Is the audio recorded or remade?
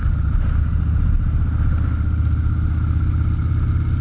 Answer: recorded